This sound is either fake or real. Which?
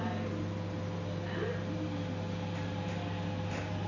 real